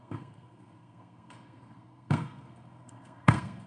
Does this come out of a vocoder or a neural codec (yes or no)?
yes